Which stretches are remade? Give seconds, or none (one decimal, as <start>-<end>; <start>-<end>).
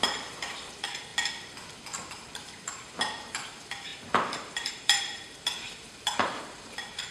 0.0-1.1; 2.1-7.1